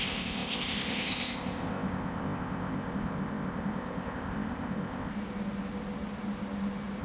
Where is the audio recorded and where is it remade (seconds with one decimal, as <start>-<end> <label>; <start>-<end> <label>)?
0.0-5.1 remade; 5.1-7.0 recorded